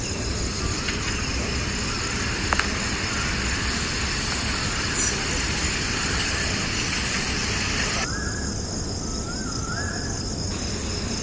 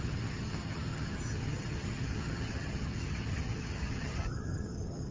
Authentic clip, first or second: first